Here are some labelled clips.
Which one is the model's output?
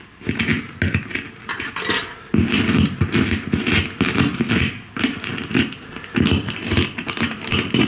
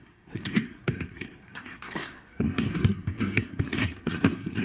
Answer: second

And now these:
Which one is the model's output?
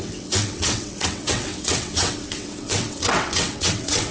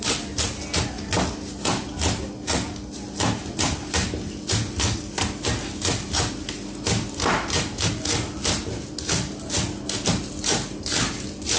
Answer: first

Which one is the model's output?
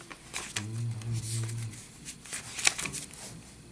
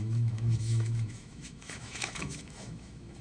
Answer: second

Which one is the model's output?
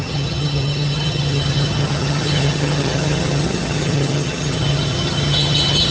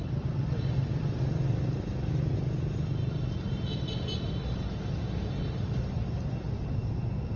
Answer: first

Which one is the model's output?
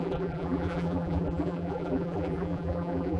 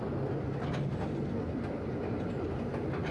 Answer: first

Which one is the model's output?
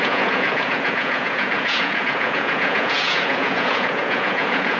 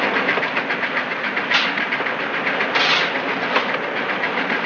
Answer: first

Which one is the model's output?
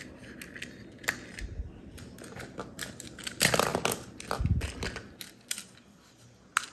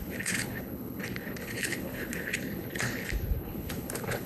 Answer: second